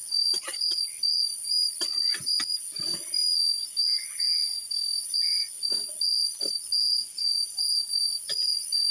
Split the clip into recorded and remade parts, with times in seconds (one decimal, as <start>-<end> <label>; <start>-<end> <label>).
0.0-6.9 recorded; 6.9-7.9 remade; 7.9-8.9 recorded